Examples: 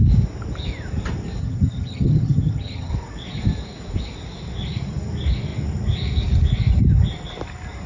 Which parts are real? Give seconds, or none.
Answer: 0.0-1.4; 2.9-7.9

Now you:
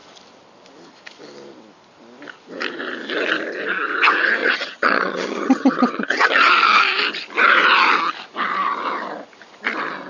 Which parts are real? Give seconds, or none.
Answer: 0.0-4.4; 6.5-10.1

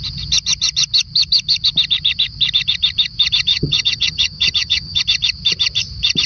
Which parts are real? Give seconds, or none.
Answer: 0.0-3.5; 5.0-6.3

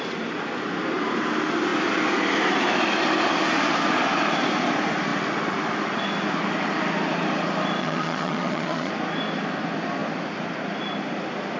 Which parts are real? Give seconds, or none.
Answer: 0.0-7.8; 8.9-11.6